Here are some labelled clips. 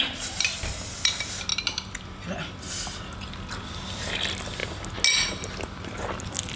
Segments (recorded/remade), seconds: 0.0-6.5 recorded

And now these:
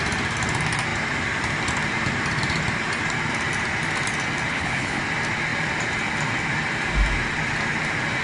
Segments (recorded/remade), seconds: 0.0-4.5 recorded; 4.5-5.0 remade; 5.0-8.2 recorded

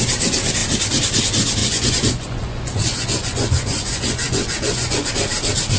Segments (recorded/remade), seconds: 0.0-1.6 recorded; 1.6-5.1 remade; 5.1-5.8 recorded

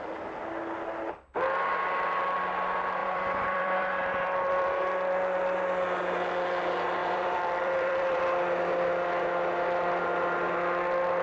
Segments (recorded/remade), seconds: 0.0-3.0 recorded; 3.0-4.8 remade; 4.8-7.0 recorded; 7.0-8.2 remade; 8.2-11.2 recorded

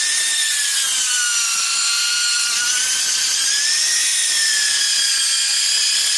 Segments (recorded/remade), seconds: 0.0-4.0 recorded; 4.0-4.8 remade; 4.8-6.2 recorded

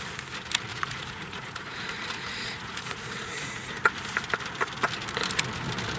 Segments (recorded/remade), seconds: 0.0-0.7 recorded; 0.7-3.7 remade; 3.7-6.0 recorded

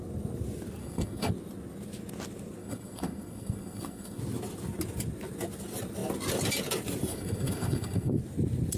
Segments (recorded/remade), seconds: 0.0-0.8 recorded; 0.8-1.3 remade; 1.3-2.6 recorded; 2.6-4.2 remade; 4.2-7.1 recorded; 7.1-8.2 remade; 8.2-8.8 recorded

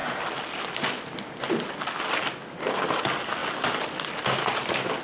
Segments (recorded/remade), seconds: 0.0-1.5 remade; 1.5-3.4 recorded; 3.4-4.1 remade; 4.1-5.0 recorded